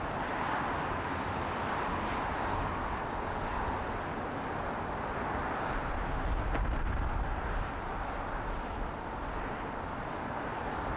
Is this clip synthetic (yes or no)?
no